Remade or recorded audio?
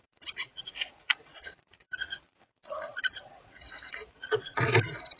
remade